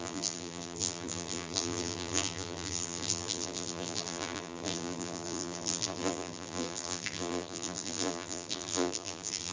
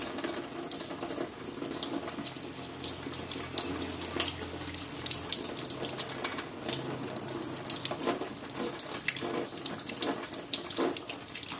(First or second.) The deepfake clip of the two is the first